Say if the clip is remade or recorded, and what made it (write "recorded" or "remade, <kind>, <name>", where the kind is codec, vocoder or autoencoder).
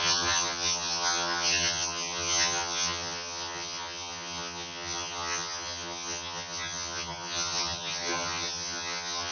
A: remade, vocoder, HiFi-GAN